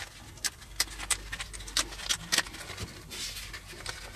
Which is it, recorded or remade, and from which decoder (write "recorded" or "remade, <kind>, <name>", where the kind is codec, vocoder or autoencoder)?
recorded